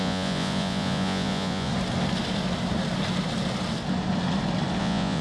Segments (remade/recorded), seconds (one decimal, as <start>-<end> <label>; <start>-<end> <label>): 0.0-1.7 remade; 1.7-4.8 recorded; 4.8-5.2 remade